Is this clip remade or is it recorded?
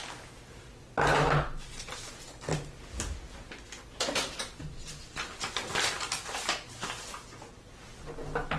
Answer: recorded